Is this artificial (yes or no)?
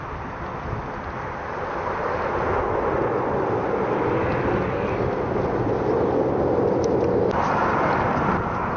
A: no